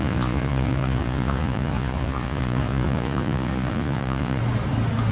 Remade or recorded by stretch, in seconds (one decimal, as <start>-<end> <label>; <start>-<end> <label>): 0.0-4.4 remade; 4.4-5.1 recorded

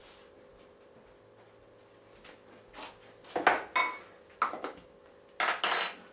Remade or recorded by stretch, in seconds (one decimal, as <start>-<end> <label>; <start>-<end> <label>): 0.0-6.1 recorded

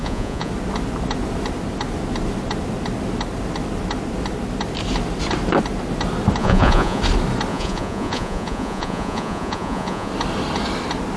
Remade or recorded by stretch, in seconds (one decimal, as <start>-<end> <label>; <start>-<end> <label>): 0.0-0.5 remade; 0.5-6.4 recorded; 6.4-7.0 remade; 7.0-7.5 recorded; 7.5-10.1 remade; 10.1-11.2 recorded

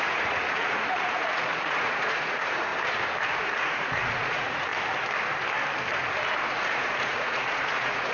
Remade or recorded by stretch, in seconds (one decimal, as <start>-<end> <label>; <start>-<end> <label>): 0.0-2.7 remade; 2.7-3.3 recorded; 3.3-4.7 remade; 4.7-6.4 recorded; 6.4-8.1 remade

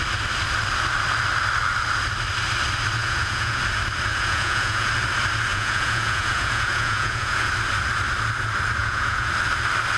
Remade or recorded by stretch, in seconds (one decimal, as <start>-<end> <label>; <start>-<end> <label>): 0.0-3.0 recorded; 3.0-3.6 remade; 3.6-4.1 recorded; 4.1-4.9 remade; 4.9-5.5 recorded; 5.5-7.5 remade; 7.5-8.8 recorded; 8.8-9.3 remade; 9.3-10.0 recorded

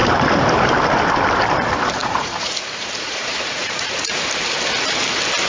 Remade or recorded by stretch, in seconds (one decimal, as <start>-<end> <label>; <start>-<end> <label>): 0.0-2.0 recorded; 2.0-4.3 remade; 4.3-5.5 recorded

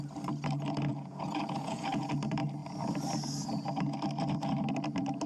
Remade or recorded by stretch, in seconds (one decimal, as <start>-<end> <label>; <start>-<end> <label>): 0.0-0.9 recorded; 0.9-2.1 remade; 2.1-5.3 recorded